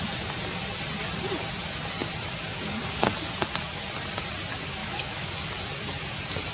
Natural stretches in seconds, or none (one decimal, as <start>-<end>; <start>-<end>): 0.0-4.8; 5.3-6.5